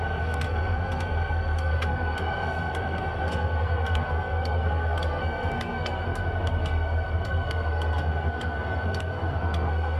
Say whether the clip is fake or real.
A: fake